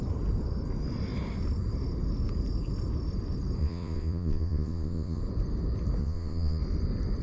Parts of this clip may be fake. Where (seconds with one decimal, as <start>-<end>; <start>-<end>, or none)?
3.6-5.2; 6.0-6.6